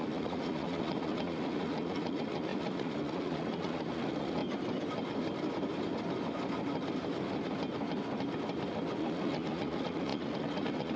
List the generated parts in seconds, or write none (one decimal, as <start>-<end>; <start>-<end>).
0.0-4.4; 9.0-11.0